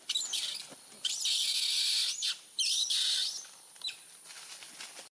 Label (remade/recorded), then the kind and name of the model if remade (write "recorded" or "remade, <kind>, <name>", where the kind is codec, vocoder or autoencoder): recorded